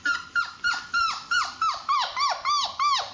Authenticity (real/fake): real